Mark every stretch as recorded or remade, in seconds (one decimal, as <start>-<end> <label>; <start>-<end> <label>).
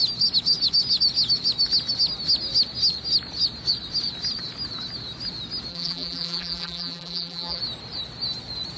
0.0-5.7 recorded; 5.7-7.6 remade; 7.6-8.8 recorded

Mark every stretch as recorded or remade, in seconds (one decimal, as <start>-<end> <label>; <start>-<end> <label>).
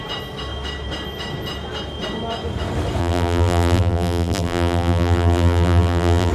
0.0-3.0 recorded; 3.0-6.3 remade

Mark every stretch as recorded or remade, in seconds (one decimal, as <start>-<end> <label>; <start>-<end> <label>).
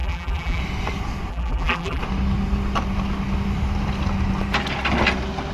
0.0-0.6 remade; 0.6-1.3 recorded; 1.3-2.0 remade; 2.0-5.5 recorded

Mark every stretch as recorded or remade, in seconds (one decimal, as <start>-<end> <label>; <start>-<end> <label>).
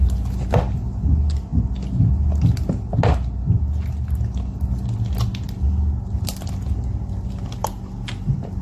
0.0-8.6 recorded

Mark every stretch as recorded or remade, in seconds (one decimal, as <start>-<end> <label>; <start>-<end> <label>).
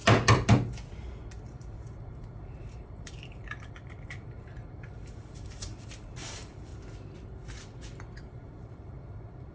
0.0-1.4 recorded; 1.4-6.7 remade; 6.7-8.2 recorded; 8.2-9.5 remade